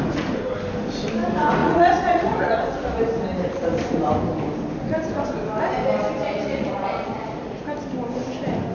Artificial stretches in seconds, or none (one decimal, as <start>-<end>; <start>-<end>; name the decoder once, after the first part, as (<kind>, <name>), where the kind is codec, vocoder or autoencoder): 1.6-2.6 (vocoder, Vocos); 6.2-7.6